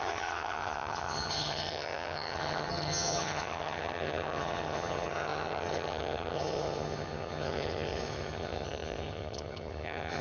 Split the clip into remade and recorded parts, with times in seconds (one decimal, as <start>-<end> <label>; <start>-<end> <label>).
0.0-10.2 remade